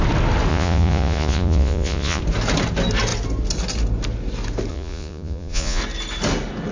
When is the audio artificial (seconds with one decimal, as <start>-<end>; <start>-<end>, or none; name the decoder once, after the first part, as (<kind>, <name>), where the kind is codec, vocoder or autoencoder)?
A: 0.5-2.2 (vocoder, Vocos); 4.7-5.8